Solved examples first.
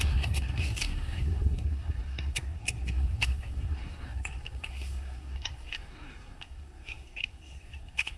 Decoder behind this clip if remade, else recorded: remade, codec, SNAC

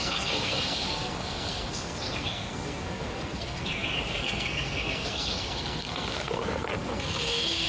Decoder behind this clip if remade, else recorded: remade, codec, SNAC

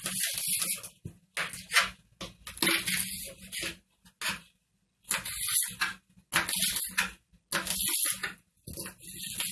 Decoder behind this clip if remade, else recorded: recorded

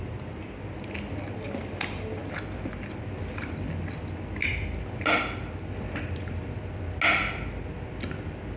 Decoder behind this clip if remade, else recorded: recorded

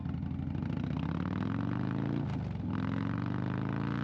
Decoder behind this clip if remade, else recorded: recorded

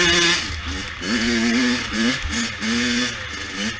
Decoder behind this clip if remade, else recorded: recorded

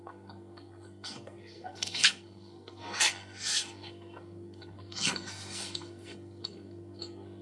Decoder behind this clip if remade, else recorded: remade, codec, SNAC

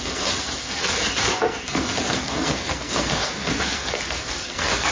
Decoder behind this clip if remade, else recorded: remade, codec, SNAC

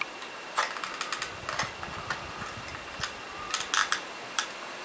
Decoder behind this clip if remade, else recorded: recorded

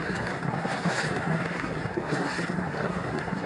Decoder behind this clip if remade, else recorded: remade, codec, SNAC